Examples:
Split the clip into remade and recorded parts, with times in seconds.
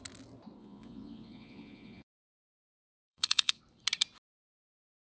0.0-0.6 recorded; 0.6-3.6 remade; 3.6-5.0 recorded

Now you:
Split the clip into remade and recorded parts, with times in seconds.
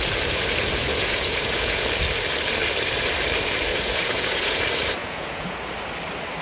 0.0-0.9 recorded; 0.9-1.8 remade; 1.8-3.7 recorded; 3.7-4.6 remade; 4.6-5.0 recorded; 5.0-5.6 remade; 5.6-6.4 recorded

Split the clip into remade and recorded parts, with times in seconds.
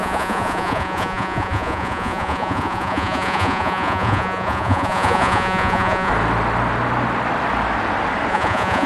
0.0-6.1 remade; 6.1-8.3 recorded; 8.3-8.9 remade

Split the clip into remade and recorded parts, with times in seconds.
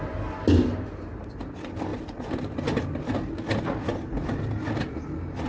0.0-5.5 recorded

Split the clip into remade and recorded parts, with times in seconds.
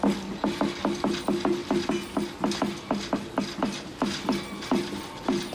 0.0-5.5 recorded